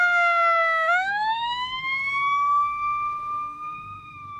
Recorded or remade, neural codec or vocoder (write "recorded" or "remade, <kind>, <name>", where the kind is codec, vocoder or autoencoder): remade, autoencoder, DAC-VAE